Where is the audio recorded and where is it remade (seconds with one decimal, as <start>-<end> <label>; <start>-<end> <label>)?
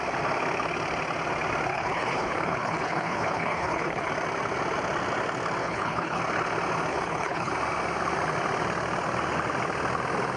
0.0-1.7 recorded; 1.7-4.1 remade; 4.1-5.6 recorded; 5.6-6.2 remade; 6.2-6.9 recorded; 6.9-7.5 remade; 7.5-10.4 recorded